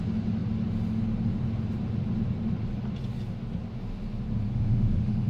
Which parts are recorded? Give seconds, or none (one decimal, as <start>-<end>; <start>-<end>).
0.0-4.5